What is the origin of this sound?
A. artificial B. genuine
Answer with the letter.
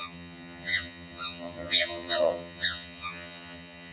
A